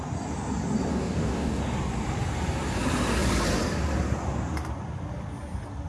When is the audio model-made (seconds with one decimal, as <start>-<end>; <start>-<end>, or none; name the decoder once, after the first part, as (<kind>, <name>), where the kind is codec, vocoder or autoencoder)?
0.9-1.6 (codec, DAC)